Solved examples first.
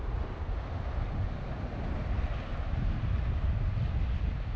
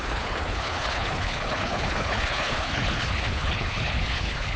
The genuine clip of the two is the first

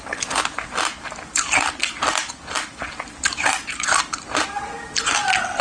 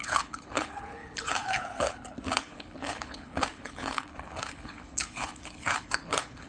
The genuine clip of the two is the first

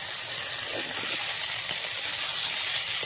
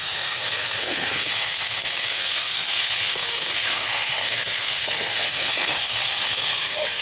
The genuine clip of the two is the first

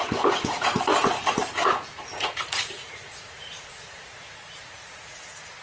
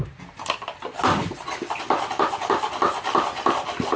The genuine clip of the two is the second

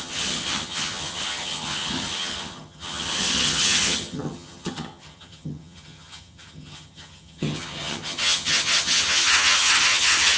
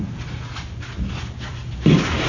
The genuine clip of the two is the second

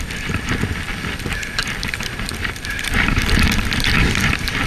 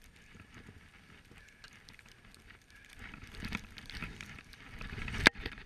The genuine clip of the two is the second